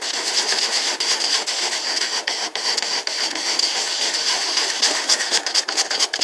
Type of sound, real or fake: fake